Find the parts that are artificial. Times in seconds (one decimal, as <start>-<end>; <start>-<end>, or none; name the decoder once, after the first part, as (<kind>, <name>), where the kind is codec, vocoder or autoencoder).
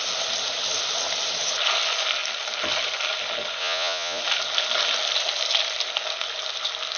3.6-4.2 (vocoder, Vocos)